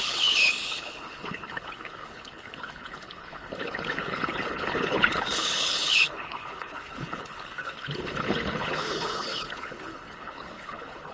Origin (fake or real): fake